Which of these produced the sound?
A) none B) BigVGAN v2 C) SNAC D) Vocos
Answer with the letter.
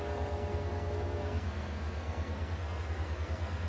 C